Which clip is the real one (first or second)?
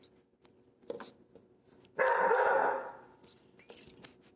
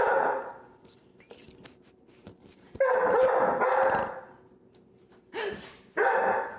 first